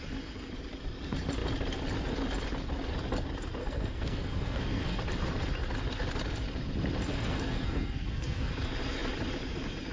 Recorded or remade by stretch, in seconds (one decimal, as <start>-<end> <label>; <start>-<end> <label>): 0.0-3.6 recorded; 3.6-5.0 remade; 5.0-7.1 recorded; 7.1-8.5 remade; 8.5-9.9 recorded